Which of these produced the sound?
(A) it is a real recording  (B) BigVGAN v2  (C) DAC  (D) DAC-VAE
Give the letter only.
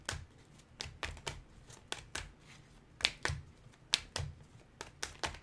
A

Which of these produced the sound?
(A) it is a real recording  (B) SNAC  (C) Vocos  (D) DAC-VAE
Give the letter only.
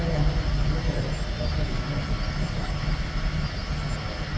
A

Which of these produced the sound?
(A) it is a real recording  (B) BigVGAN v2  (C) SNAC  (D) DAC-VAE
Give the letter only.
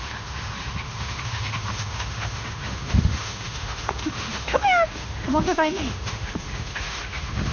D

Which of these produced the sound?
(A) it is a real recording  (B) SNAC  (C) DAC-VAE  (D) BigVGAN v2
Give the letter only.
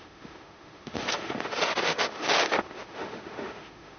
C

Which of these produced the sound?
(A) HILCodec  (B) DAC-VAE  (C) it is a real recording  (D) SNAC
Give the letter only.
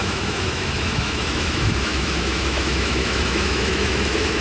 B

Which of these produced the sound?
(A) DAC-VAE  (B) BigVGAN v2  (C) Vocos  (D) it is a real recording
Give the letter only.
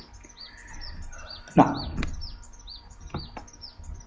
D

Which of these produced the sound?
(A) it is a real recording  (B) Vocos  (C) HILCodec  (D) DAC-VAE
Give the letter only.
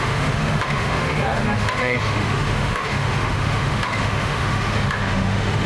D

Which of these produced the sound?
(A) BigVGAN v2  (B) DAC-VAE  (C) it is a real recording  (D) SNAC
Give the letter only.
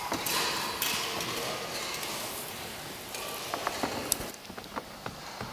C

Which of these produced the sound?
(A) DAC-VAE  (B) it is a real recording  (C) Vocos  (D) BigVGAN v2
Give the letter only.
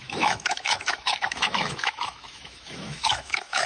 A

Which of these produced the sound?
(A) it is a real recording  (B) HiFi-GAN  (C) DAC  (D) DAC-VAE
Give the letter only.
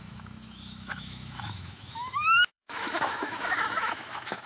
D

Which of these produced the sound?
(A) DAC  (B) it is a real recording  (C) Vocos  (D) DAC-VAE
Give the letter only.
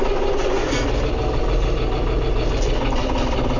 B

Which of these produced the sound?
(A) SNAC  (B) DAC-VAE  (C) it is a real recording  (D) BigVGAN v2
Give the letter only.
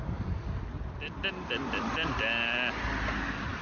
C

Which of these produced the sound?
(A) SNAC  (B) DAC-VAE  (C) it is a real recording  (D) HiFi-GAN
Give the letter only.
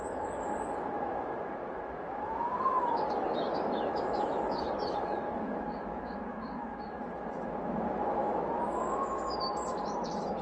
B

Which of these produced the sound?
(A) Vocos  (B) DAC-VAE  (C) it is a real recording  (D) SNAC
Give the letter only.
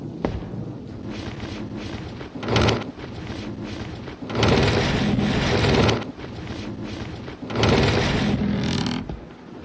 C